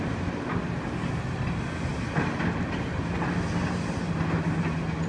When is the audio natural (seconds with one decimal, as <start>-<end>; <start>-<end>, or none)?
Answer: 0.0-5.1